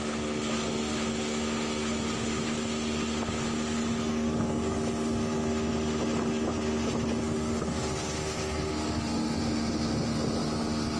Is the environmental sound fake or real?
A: real